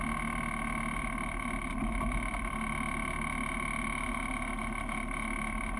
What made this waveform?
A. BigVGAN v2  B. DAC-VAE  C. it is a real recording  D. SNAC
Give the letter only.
C